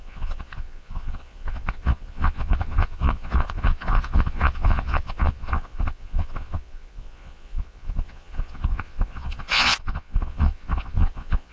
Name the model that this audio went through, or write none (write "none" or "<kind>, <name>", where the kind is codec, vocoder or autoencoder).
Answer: vocoder, Vocos